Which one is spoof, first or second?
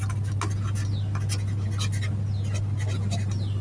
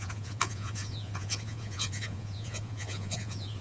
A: second